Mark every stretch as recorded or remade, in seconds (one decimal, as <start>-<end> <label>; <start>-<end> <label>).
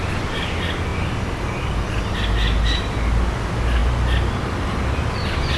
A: 0.0-5.6 recorded